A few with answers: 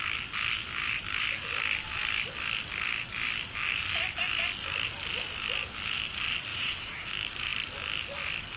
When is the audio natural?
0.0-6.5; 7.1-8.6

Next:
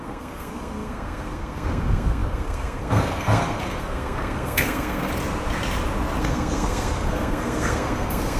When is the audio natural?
5.1-6.2

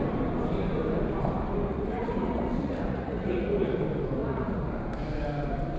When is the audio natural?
0.0-1.7; 3.8-4.2; 4.7-5.8

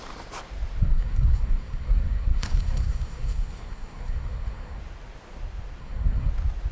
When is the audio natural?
0.0-0.8; 4.8-5.8; 6.3-6.7